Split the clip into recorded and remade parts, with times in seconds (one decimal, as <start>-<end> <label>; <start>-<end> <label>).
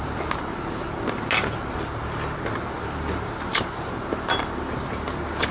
0.0-5.5 recorded